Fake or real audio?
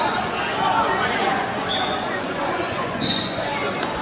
fake